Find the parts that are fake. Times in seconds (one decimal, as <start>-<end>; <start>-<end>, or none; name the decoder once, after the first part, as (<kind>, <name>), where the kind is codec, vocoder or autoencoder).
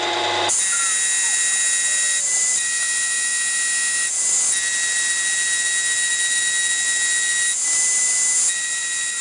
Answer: none